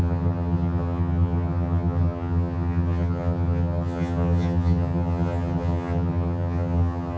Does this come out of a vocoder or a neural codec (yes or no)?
yes